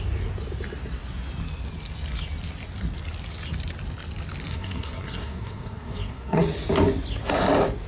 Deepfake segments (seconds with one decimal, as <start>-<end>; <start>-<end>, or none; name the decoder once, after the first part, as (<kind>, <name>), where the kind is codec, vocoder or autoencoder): 4.5-6.4 (codec, SNAC)